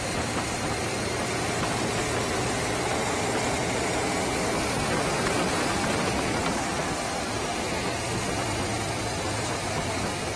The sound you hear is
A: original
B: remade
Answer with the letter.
B